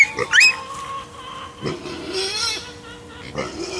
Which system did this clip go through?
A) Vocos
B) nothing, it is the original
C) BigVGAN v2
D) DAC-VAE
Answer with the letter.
B